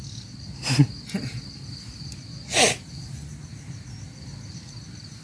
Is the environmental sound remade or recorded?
recorded